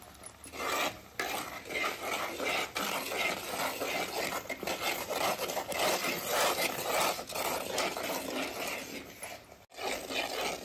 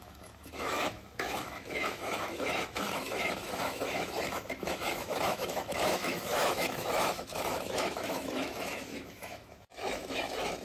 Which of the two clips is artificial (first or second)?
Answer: second